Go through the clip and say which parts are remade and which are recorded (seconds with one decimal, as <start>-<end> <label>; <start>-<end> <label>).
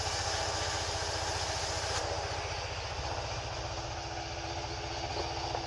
0.0-5.7 recorded